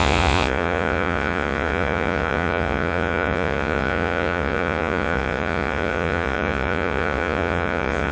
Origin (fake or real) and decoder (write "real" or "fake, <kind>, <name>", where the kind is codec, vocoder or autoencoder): fake, vocoder, Vocos